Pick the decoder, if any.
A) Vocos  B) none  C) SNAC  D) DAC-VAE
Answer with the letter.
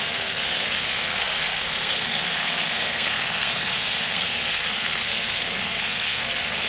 C